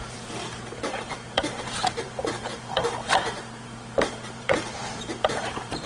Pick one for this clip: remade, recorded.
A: remade